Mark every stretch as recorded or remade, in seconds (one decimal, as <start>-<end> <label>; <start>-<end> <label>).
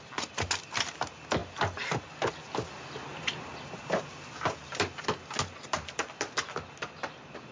0.0-7.5 recorded